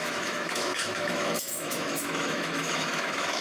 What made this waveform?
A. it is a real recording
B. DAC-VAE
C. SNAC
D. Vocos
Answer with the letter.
B